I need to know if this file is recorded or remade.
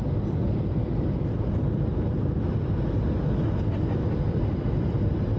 recorded